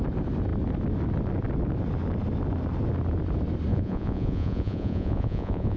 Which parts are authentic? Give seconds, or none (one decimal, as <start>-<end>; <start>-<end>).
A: 0.0-3.7